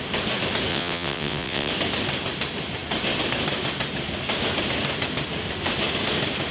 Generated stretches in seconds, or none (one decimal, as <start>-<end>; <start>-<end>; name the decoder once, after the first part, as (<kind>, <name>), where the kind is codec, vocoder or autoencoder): 0.7-1.7 (vocoder, WaveNeXt)